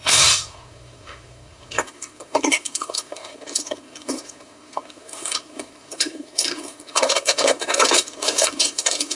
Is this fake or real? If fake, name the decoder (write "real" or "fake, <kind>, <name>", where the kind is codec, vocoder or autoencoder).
fake, codec, SNAC